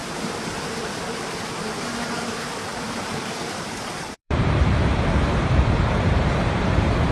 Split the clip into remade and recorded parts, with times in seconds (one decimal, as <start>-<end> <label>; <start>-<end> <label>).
0.0-1.6 remade; 1.6-2.7 recorded; 2.7-7.1 remade